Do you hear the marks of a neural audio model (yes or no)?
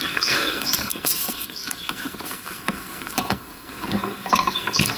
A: yes